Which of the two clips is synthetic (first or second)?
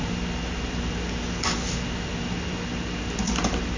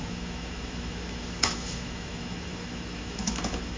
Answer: second